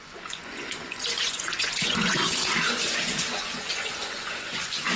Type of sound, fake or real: fake